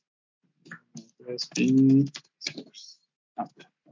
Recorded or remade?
recorded